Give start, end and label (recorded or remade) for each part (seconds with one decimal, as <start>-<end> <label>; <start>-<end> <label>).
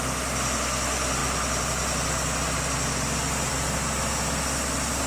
0.0-5.1 recorded